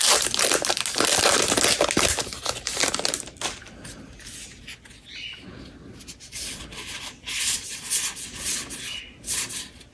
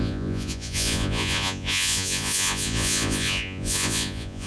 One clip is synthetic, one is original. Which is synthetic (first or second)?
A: second